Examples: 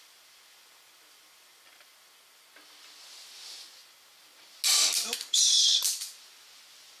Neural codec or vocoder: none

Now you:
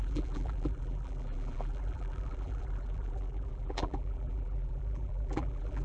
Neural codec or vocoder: vocoder, BigVGAN v2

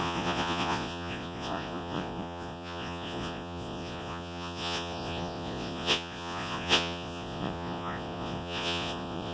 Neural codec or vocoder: vocoder, Vocos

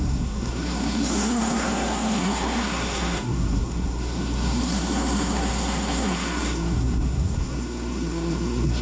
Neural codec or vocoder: codec, SNAC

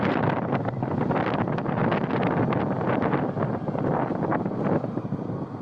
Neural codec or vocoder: none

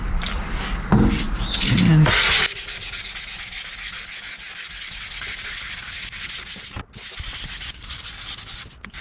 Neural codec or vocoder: none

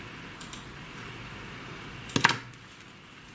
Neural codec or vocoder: none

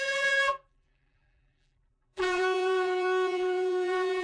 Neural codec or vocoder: vocoder, BigVGAN v2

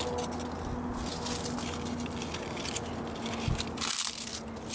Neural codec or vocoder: none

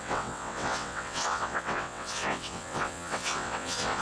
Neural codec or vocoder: vocoder, WaveNeXt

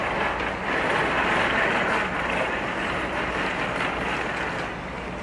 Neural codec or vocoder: none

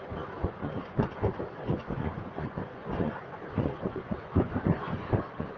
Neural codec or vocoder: vocoder, Vocos